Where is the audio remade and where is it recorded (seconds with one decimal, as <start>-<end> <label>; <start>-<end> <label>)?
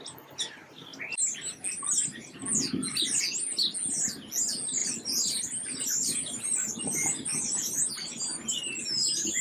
0.0-4.8 recorded; 4.8-7.9 remade; 7.9-9.4 recorded